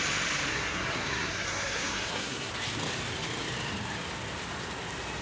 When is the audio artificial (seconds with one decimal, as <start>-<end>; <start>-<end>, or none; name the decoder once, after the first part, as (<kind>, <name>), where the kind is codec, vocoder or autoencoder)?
0.5-2.5 (codec, SNAC)